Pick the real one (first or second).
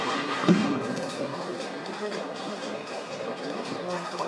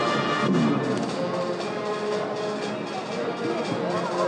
second